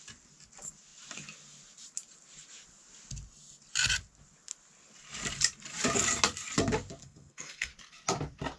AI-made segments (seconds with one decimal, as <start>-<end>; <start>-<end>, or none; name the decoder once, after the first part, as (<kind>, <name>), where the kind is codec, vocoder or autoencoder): 7.0-7.7 (codec, SNAC)